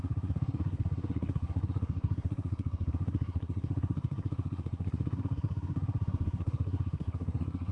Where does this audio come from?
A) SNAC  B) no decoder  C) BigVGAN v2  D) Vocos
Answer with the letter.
A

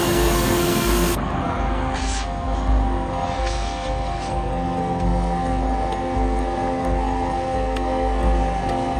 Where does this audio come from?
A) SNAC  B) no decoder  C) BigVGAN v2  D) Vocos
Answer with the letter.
A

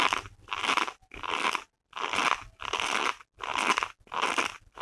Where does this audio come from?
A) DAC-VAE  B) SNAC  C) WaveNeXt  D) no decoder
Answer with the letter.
D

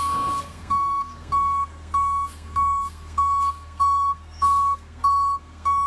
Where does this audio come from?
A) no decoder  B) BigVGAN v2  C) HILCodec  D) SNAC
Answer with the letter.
D